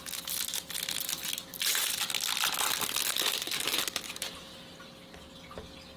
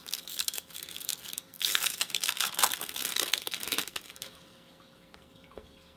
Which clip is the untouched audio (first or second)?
first